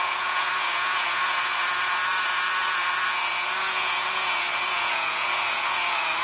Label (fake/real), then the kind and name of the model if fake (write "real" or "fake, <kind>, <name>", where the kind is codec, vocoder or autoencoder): fake, vocoder, Vocos